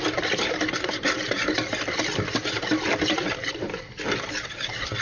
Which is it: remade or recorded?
recorded